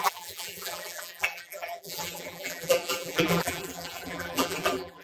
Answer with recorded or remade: remade